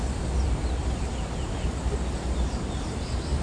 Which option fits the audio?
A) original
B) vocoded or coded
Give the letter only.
A